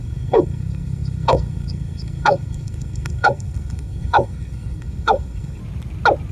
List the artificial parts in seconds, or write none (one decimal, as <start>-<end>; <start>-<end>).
0.0-5.6